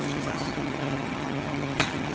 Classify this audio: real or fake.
fake